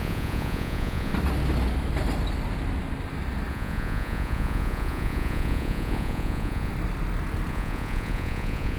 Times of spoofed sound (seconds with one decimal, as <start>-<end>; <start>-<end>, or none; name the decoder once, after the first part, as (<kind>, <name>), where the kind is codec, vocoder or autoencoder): 0.0-1.1 (vocoder, Vocos); 3.5-6.7; 7.5-8.8